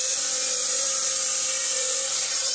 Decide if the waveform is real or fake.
fake